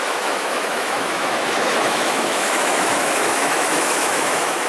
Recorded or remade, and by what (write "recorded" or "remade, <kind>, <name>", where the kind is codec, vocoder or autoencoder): remade, autoencoder, DAC-VAE